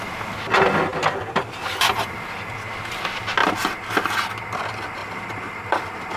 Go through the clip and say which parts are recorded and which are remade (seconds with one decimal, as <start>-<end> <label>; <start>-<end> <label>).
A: 0.0-0.9 recorded; 0.9-2.6 remade; 2.6-5.0 recorded; 5.0-5.6 remade; 5.6-6.2 recorded